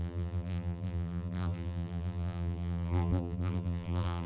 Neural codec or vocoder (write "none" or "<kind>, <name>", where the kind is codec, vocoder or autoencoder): vocoder, BigVGAN v2